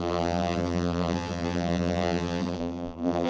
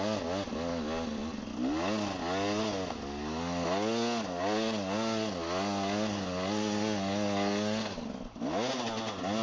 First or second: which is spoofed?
first